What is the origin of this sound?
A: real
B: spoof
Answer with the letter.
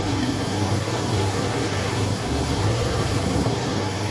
B